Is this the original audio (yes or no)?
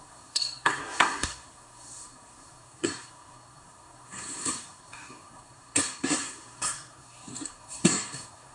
no